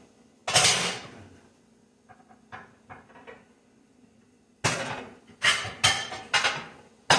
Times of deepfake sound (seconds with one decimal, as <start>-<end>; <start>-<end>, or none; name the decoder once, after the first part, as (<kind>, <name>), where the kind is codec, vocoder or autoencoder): none